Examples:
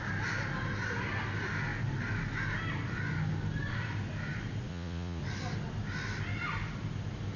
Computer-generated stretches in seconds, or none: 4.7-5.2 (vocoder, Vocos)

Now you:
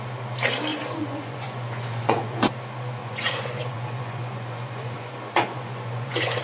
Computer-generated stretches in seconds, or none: 0.7-2.5 (vocoder, Vocos); 3.0-6.4